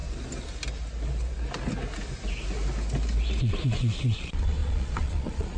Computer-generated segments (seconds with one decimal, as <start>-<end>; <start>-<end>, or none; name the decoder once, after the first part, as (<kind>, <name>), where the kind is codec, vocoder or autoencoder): 3.4-5.6 (vocoder, Vocos)